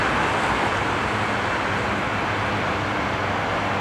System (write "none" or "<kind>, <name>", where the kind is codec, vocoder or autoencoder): none